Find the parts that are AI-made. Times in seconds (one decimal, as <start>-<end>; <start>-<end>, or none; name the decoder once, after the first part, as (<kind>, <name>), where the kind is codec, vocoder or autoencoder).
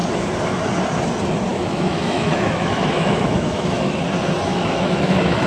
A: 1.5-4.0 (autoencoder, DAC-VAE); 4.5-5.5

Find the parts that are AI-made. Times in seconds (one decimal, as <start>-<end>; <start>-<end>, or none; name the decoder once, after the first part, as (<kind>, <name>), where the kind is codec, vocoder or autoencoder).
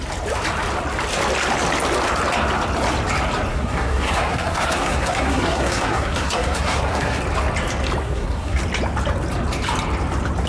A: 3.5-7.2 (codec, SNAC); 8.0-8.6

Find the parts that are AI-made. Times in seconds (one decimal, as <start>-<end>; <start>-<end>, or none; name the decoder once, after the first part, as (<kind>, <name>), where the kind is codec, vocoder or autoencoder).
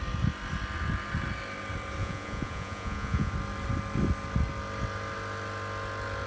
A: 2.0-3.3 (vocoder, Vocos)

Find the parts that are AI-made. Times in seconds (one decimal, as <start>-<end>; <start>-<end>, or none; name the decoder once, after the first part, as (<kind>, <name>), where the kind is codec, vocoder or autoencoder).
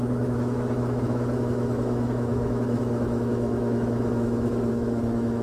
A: 0.0-5.4 (autoencoder, DAC-VAE)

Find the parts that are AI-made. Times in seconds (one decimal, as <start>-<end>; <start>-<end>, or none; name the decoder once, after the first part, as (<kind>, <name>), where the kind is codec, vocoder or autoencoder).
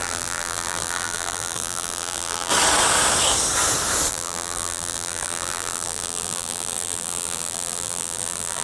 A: 0.0-2.5 (vocoder, BigVGAN v2); 4.1-8.6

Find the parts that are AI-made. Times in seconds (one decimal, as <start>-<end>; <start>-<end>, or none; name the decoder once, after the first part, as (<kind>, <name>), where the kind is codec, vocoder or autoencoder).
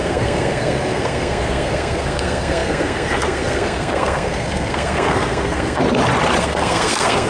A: 0.0-5.8 (codec, SNAC); 6.4-7.3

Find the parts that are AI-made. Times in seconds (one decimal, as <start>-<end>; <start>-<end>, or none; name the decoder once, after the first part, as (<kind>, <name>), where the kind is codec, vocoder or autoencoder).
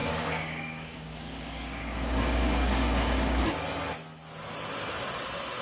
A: 0.0-3.4 (codec, DAC)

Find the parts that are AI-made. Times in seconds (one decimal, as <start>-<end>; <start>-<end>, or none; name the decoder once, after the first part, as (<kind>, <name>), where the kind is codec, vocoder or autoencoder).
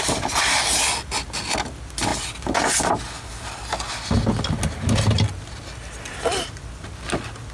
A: none